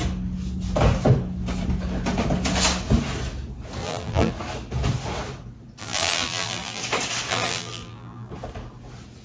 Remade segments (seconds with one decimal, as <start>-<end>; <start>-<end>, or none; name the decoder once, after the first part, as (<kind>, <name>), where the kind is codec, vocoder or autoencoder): 3.8-4.3 (vocoder, BigVGAN v2); 5.8-6.8; 7.3-8.3